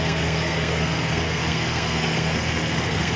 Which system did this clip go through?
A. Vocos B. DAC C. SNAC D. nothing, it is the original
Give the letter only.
C